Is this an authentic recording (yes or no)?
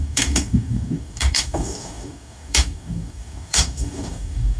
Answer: no